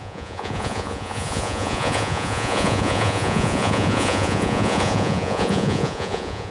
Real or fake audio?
fake